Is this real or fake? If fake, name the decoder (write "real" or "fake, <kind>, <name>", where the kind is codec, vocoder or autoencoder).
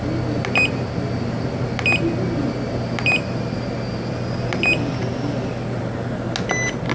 real